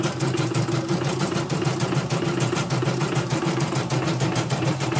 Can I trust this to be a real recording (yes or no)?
no